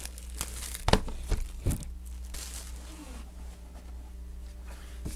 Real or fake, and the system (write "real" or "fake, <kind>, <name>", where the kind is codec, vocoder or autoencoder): real